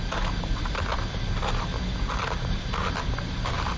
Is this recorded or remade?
recorded